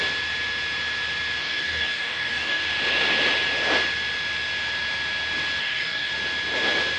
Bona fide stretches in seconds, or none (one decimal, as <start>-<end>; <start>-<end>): 0.0-1.4; 2.6-5.6; 6.1-7.0

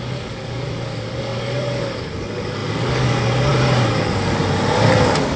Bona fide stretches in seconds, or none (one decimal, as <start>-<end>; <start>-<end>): 4.4-4.9

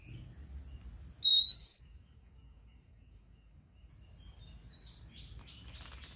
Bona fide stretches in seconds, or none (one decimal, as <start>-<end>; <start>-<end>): 0.0-1.3; 3.9-6.2

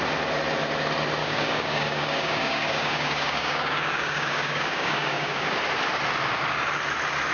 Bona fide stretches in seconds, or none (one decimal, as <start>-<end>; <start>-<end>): 0.0-1.2; 5.6-7.3

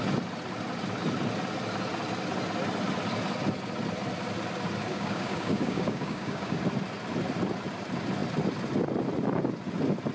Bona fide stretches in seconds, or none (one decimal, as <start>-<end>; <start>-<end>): 0.0-4.9; 6.6-10.1

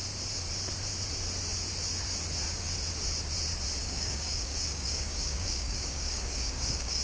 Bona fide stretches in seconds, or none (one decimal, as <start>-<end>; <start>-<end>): 0.0-3.8

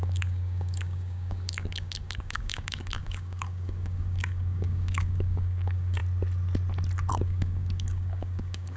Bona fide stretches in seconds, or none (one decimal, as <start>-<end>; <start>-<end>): 6.0-7.1

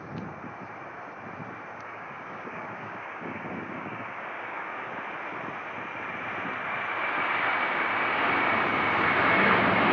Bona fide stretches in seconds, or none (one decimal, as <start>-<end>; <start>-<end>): 0.0-1.7; 4.9-9.9